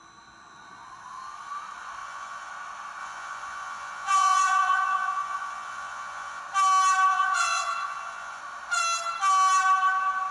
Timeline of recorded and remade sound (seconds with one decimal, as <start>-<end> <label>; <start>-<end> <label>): 0.0-2.0 recorded; 2.0-2.5 remade; 2.5-3.0 recorded; 3.0-6.4 remade; 6.4-7.1 recorded; 7.1-8.4 remade; 8.4-10.3 recorded